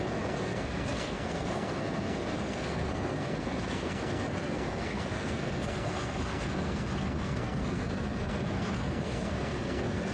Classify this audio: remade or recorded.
remade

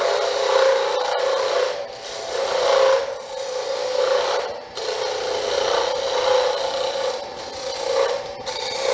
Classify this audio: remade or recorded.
recorded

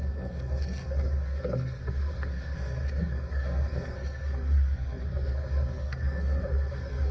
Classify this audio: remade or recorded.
remade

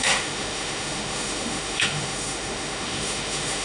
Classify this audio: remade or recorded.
remade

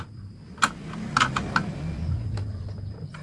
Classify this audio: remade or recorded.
recorded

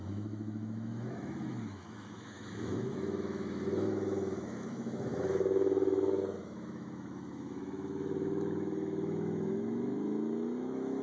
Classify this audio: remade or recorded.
remade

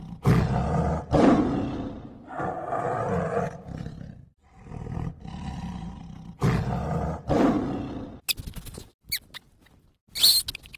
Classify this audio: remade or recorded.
recorded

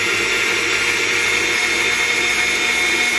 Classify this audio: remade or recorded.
recorded